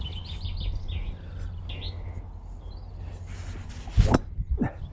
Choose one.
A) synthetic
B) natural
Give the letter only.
B